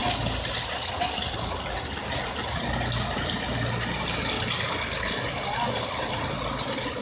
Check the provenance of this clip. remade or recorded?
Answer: recorded